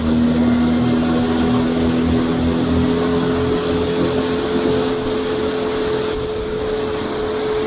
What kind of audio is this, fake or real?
real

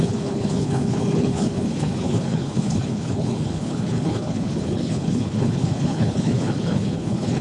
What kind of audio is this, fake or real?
fake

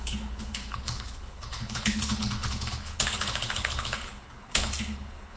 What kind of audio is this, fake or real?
fake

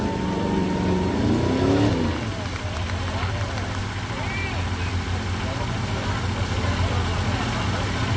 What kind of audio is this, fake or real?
real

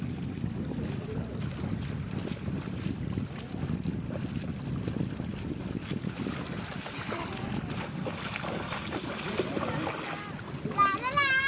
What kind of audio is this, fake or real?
real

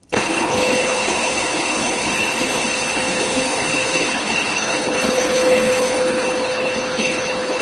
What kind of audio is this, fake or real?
fake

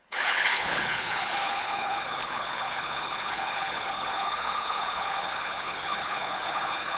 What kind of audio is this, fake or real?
fake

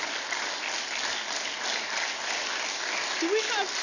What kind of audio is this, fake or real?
real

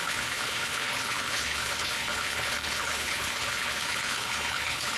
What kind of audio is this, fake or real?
fake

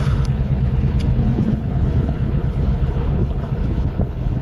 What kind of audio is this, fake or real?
fake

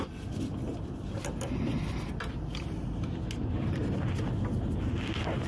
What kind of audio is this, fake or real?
real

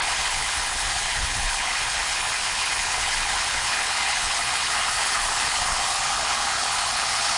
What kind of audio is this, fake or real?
fake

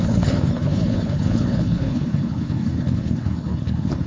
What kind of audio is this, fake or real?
fake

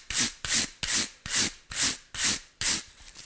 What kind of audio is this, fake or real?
real